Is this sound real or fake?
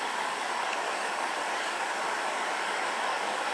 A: fake